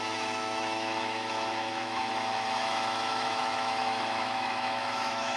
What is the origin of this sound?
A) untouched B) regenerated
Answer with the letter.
B